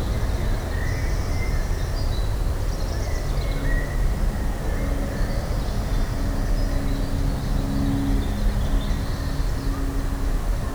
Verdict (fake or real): real